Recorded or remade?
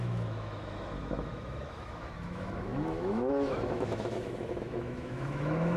remade